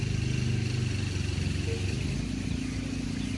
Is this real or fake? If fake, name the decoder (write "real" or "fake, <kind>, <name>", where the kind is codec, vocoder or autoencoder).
real